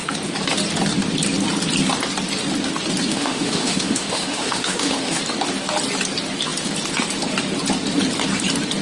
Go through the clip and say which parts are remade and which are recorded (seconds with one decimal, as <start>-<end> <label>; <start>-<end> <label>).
0.0-3.1 recorded; 3.1-5.2 remade; 5.2-8.8 recorded